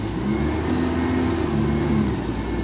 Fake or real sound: real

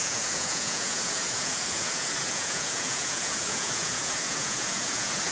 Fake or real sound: fake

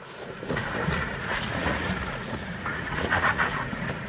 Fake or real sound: fake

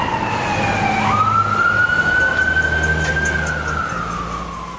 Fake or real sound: real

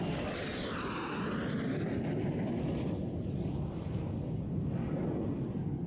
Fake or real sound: real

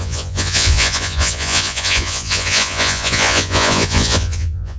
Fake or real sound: fake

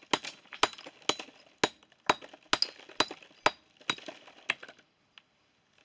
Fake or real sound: real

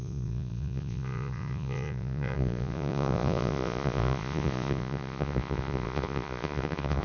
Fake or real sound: fake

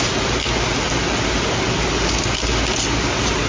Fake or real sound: real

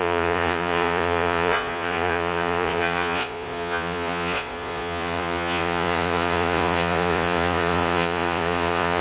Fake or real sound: fake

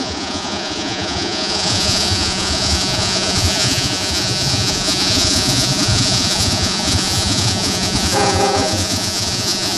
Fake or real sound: fake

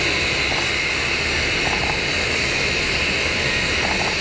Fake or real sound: real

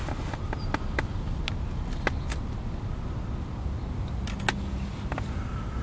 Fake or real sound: real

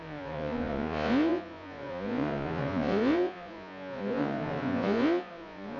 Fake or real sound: fake